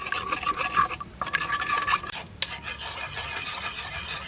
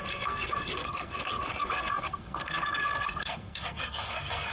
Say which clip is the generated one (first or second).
second